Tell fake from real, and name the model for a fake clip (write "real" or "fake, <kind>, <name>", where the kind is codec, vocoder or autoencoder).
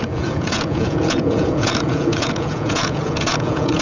fake, vocoder, Vocos